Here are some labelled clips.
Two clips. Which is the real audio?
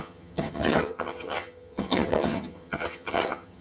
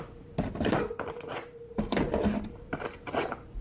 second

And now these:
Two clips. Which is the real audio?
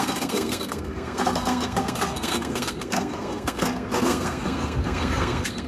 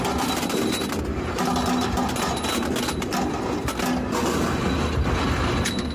second